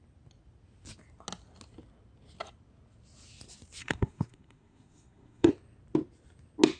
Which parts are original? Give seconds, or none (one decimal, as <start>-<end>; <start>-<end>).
0.0-3.8; 5.5-6.8